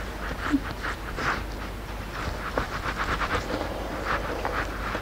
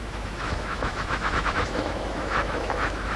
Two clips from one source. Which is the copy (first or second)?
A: second